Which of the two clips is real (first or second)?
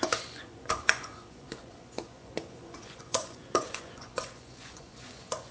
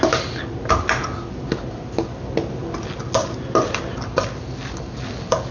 second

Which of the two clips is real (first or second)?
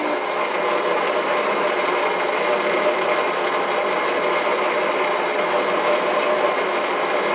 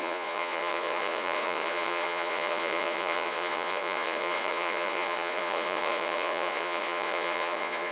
first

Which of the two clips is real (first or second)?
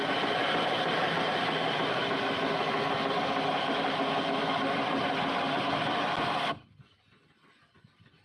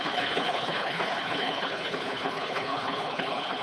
first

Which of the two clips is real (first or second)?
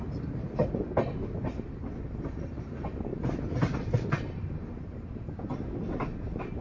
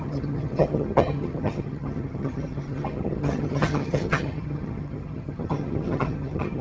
first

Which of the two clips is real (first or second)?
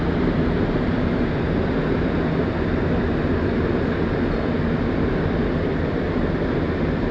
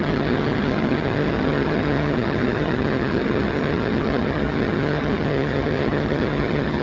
first